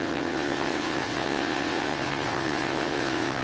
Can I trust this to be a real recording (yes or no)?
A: no